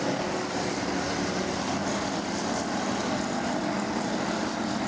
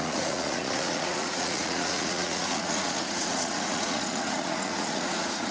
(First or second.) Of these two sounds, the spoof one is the second